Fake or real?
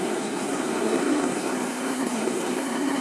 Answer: fake